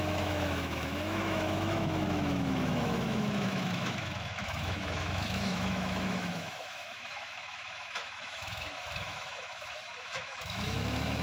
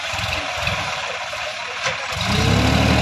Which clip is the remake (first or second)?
first